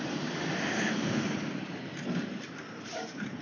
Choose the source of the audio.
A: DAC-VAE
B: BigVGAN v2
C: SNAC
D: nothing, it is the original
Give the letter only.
B